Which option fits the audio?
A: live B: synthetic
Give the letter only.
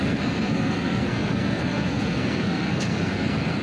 B